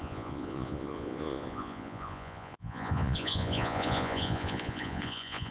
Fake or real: fake